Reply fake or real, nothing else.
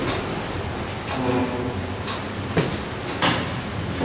real